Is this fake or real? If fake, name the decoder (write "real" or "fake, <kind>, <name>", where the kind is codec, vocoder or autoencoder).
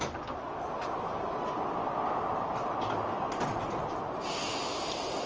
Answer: real